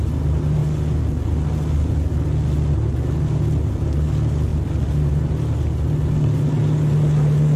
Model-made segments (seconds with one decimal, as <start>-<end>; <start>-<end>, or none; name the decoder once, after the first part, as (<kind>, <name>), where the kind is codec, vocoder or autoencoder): none